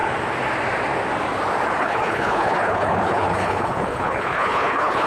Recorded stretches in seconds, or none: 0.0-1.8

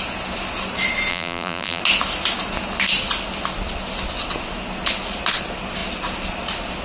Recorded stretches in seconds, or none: 0.0-1.1; 1.8-6.8

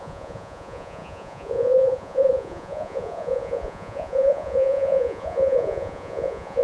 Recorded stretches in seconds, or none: none